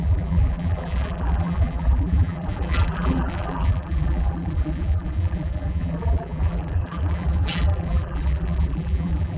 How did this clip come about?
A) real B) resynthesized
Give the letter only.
B